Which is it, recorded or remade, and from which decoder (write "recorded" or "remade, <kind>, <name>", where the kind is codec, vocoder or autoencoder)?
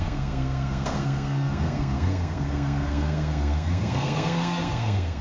remade, codec, SNAC